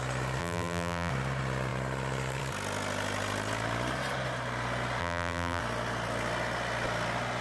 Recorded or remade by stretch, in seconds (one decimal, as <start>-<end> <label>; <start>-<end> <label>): 0.0-0.4 recorded; 0.4-1.1 remade; 1.1-5.0 recorded; 5.0-5.6 remade; 5.6-7.4 recorded